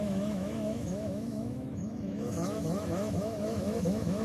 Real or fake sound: fake